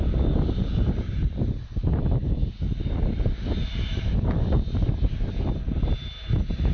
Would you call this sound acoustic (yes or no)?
yes